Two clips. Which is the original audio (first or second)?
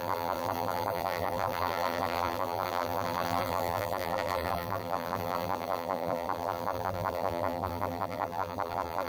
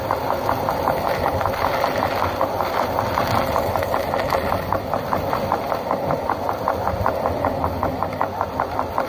second